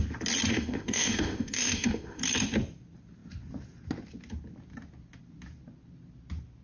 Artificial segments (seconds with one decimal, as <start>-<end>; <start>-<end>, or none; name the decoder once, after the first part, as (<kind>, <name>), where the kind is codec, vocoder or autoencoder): 0.5-2.2 (autoencoder, DAC-VAE)